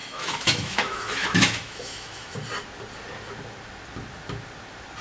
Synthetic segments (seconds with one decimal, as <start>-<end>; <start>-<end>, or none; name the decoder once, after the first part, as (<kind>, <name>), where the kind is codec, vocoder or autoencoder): 0.0-2.3 (autoencoder, DAC-VAE)